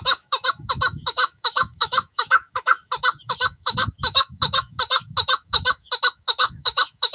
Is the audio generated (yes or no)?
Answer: yes